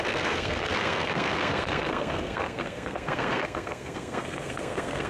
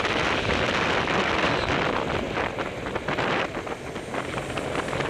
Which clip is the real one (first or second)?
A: second